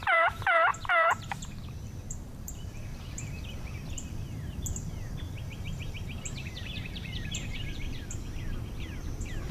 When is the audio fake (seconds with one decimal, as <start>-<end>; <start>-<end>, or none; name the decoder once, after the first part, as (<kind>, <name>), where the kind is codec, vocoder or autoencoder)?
0.0-9.5 (vocoder, BigVGAN v2)